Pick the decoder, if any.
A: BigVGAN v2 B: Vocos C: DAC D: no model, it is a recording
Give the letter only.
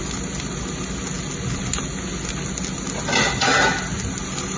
D